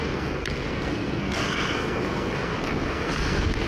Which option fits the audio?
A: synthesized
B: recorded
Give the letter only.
A